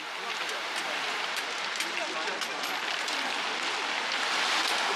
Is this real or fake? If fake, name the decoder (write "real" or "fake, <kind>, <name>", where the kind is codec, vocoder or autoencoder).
real